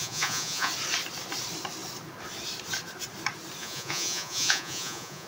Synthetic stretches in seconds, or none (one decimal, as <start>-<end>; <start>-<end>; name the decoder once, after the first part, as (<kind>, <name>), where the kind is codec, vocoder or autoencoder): 0.0-0.7 (vocoder, Vocos); 3.6-5.3